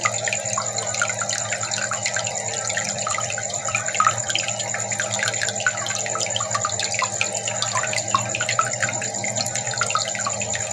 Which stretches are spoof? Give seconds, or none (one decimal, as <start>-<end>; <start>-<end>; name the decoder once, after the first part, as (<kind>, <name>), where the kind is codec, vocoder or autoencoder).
2.1-4.6 (vocoder, BigVGAN v2)